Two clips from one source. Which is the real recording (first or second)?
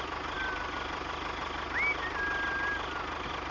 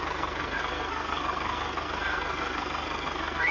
first